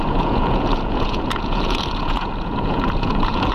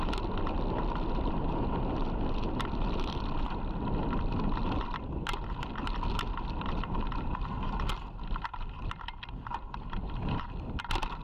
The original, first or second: second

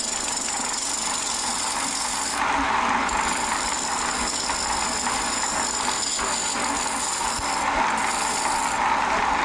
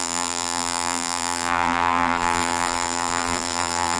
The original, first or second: first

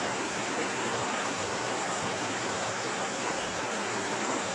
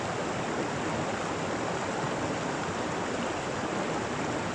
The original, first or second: second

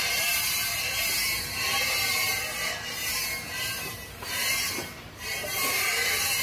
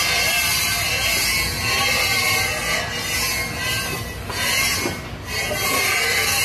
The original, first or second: second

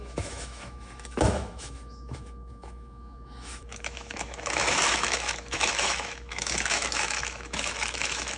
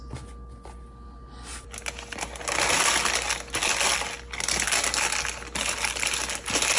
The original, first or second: second